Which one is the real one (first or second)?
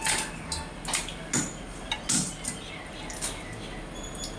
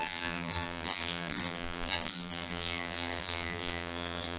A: first